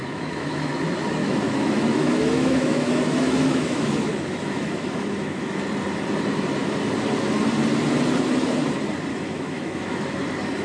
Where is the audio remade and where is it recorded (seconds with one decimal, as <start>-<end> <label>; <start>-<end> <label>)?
0.0-0.7 remade; 0.7-1.2 recorded; 1.2-5.6 remade; 5.6-9.1 recorded; 9.1-10.2 remade; 10.2-10.6 recorded